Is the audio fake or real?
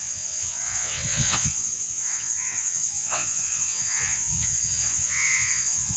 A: fake